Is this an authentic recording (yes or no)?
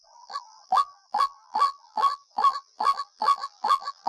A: no